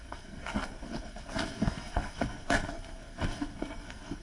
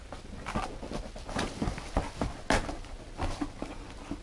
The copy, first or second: first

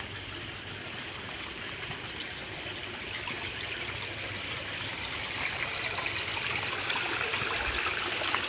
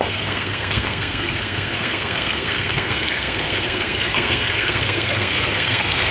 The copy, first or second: second